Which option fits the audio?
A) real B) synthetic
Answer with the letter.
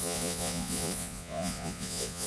B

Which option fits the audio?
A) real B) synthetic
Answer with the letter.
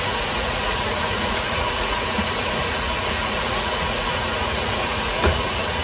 B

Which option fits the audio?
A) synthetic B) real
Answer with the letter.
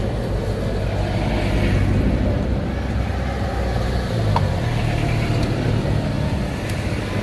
B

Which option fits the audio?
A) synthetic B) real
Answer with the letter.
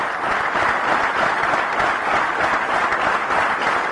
B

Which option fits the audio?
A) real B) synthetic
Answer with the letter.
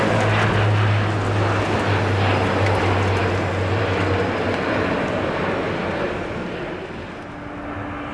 A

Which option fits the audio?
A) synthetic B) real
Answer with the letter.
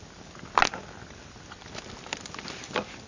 B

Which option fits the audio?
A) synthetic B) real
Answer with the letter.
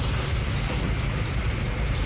B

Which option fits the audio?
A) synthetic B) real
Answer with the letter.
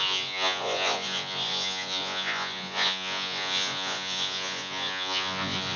A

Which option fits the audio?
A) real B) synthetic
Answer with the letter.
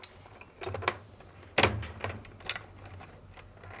A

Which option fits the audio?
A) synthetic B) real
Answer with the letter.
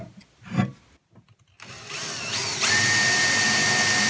B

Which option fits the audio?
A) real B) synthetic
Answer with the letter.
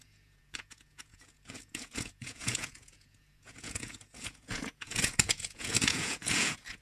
B